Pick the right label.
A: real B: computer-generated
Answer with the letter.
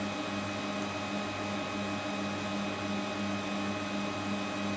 A